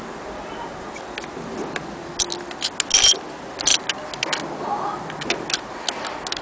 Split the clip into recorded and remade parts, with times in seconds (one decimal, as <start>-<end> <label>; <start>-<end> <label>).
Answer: 0.0-6.4 recorded